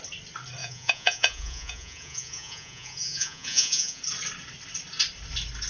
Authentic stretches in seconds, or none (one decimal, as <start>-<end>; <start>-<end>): 0.0-0.6; 4.0-5.7